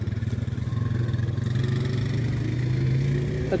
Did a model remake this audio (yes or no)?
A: no